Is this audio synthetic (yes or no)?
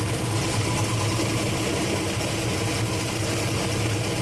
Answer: no